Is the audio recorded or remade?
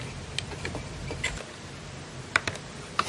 recorded